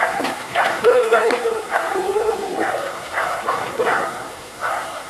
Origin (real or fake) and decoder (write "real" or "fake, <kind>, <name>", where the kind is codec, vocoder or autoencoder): fake, codec, SNAC